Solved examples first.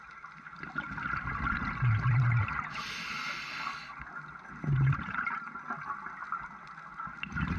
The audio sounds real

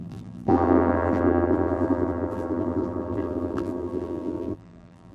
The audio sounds fake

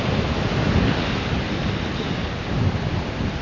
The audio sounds real